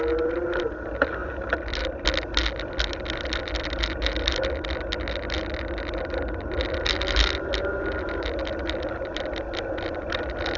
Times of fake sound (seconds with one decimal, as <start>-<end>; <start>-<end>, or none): none